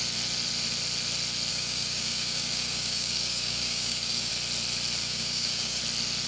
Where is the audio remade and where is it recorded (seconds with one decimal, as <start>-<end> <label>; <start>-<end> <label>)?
0.0-1.5 recorded; 1.5-4.3 remade; 4.3-5.0 recorded; 5.0-5.8 remade; 5.8-6.3 recorded